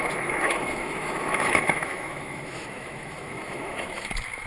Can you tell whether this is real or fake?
fake